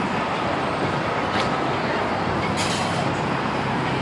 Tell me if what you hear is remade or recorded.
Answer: recorded